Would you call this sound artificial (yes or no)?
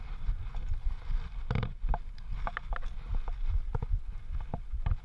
no